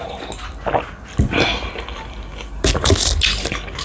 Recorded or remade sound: recorded